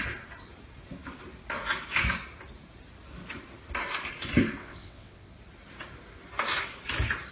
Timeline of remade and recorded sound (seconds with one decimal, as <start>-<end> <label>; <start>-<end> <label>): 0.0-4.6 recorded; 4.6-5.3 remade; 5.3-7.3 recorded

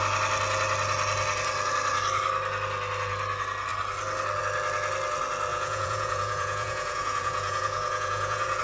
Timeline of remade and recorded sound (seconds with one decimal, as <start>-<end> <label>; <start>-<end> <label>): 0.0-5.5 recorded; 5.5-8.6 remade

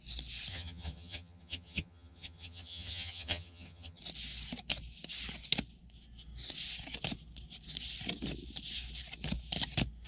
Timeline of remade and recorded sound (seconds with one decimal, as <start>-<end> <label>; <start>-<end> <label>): 0.0-0.5 recorded; 0.5-4.0 remade; 4.0-10.1 recorded

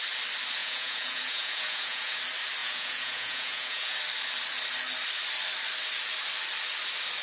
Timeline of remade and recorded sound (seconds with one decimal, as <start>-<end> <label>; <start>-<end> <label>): 0.0-0.6 recorded; 0.6-2.2 remade; 2.2-2.6 recorded; 2.6-4.0 remade; 4.0-7.2 recorded